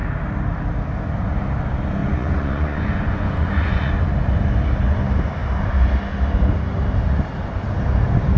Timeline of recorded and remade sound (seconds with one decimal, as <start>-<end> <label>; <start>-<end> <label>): 0.0-2.0 recorded; 2.0-3.9 remade; 3.9-8.4 recorded